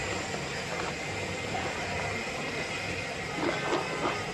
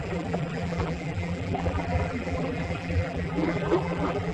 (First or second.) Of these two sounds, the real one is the first